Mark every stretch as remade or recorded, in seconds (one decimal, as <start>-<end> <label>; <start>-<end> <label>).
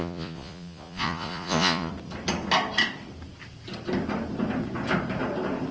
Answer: 0.0-1.9 remade; 1.9-5.7 recorded